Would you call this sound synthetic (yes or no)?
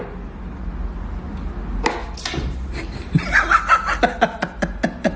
no